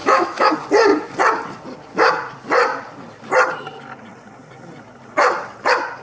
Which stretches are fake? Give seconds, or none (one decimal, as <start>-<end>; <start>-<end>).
0.0-0.5